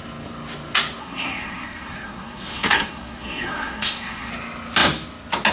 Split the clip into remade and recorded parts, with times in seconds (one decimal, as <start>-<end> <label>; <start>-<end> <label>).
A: 0.0-1.0 recorded; 1.0-4.3 remade; 4.3-5.5 recorded